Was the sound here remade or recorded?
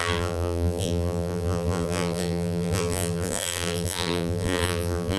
remade